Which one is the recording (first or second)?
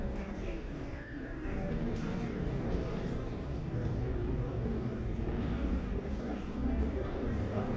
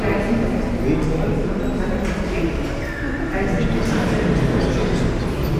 second